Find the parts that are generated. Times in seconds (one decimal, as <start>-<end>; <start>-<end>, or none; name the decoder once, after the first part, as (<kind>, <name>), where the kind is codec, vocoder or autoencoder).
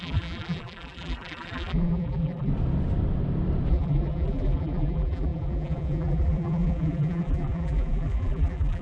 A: 0.0-2.5 (vocoder, BigVGAN v2); 3.7-8.8